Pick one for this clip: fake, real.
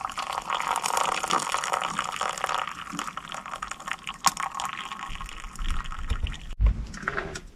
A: real